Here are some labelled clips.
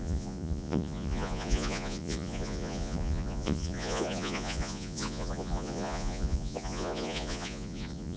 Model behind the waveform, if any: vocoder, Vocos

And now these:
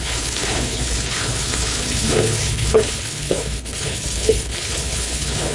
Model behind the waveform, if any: codec, HILCodec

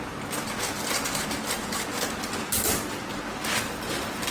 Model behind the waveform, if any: none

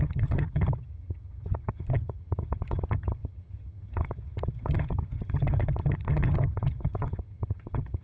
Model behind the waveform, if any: vocoder, HiFi-GAN